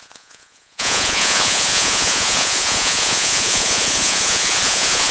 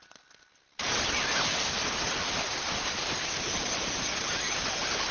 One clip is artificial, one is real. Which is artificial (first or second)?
first